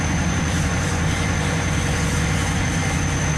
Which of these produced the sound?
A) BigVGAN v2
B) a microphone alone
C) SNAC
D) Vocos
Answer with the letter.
D